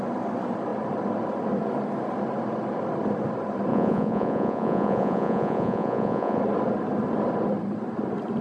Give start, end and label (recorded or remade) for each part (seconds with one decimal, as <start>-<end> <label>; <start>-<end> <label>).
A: 0.0-3.7 recorded; 3.7-6.4 remade; 6.4-8.4 recorded